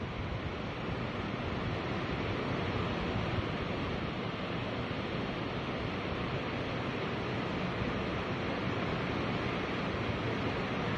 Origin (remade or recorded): recorded